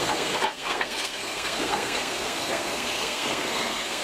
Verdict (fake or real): fake